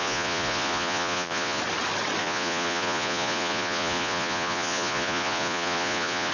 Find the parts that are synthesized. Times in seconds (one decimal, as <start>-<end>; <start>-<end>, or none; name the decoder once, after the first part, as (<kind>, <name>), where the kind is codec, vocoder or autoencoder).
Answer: 0.0-1.6 (vocoder, Vocos); 2.2-6.3